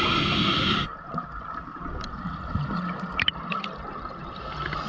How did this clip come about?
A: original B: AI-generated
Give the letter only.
A